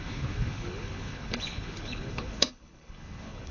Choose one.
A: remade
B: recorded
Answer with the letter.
A